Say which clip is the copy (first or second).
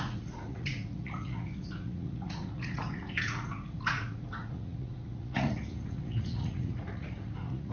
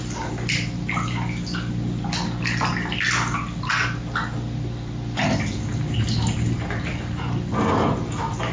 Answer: first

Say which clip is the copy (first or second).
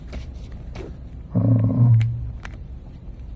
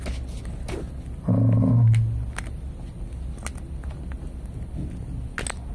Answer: first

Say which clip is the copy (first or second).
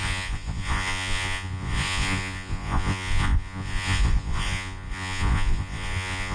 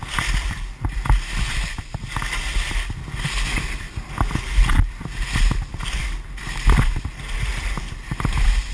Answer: first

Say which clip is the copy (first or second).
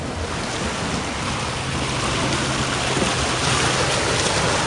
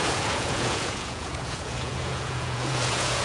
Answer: second